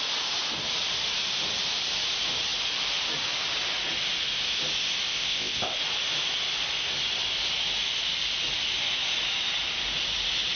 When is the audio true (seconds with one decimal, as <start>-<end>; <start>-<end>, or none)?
0.0-5.1; 5.8-10.6